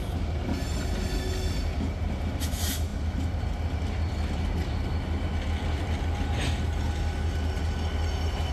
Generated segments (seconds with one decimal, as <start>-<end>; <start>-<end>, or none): none